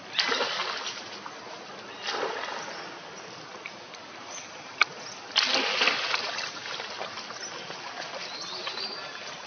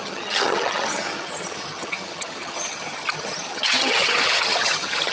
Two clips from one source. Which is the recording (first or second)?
first